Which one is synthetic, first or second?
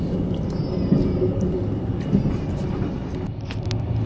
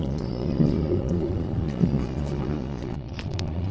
second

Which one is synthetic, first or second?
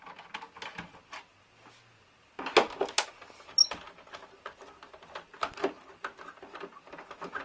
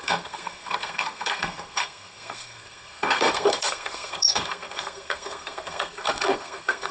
second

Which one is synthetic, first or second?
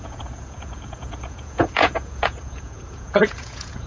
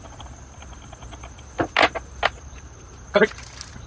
first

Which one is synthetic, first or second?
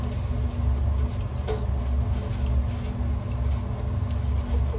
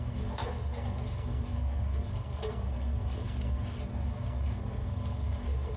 second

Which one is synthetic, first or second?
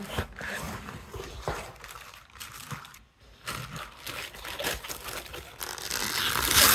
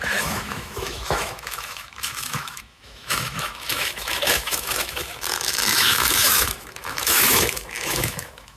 second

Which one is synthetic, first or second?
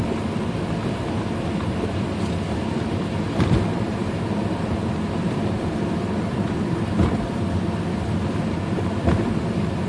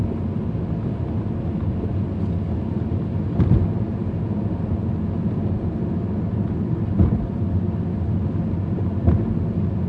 first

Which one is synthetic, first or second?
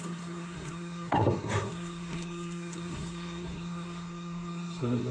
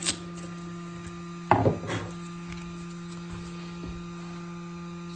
first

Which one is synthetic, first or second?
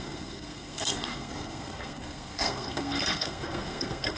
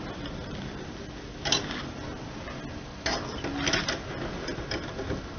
first